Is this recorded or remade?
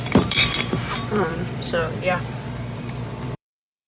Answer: remade